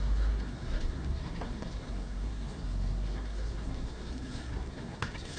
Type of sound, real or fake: fake